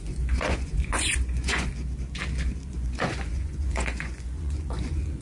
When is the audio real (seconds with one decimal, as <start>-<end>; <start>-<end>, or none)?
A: 1.7-2.7